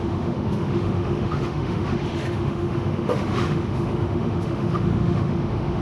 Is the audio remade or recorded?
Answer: remade